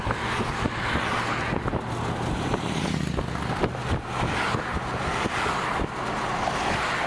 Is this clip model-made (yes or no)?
no